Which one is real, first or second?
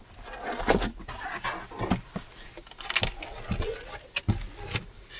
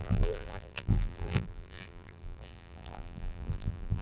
first